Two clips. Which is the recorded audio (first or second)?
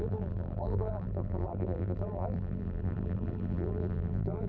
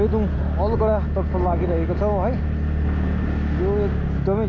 second